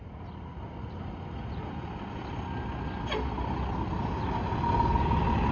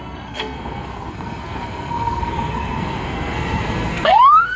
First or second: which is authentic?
first